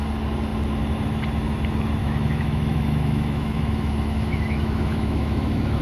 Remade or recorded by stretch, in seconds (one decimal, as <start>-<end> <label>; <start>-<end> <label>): 0.0-2.0 recorded; 2.0-5.8 remade